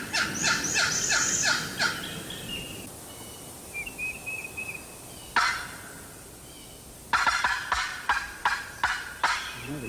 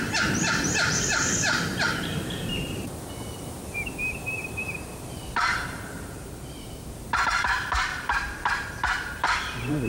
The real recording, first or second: first